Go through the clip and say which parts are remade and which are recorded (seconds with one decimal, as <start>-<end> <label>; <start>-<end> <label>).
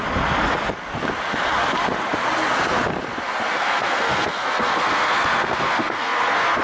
0.0-3.5 recorded; 3.5-6.6 remade